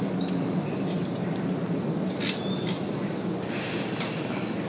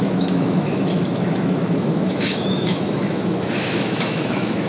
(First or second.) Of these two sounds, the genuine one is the first